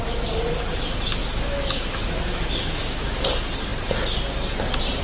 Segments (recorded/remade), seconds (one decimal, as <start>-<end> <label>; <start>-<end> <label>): 0.0-1.2 recorded; 1.2-3.2 remade; 3.2-5.0 recorded